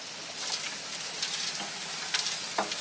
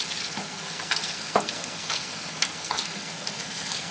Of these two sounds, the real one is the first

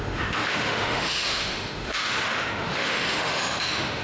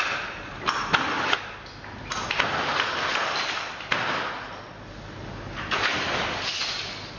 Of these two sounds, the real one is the second